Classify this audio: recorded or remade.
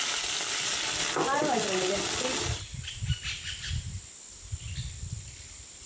recorded